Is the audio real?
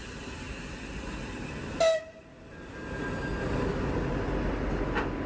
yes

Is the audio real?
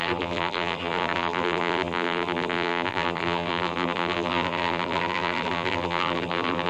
no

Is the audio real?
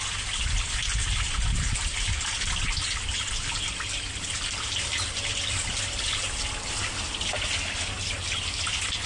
yes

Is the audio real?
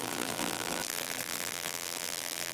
no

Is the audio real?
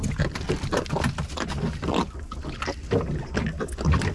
yes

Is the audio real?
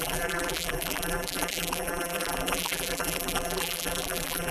no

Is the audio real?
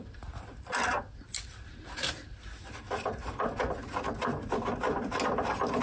yes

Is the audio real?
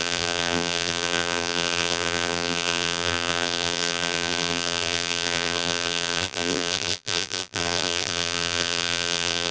no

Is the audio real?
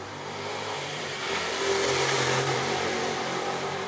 no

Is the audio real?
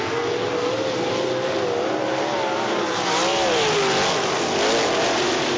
yes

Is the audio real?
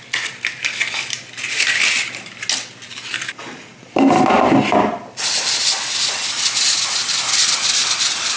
yes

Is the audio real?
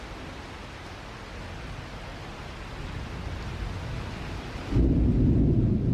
yes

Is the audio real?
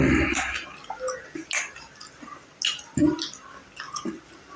yes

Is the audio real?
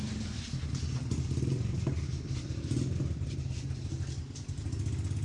yes